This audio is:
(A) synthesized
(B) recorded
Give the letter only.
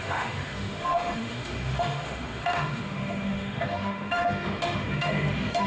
A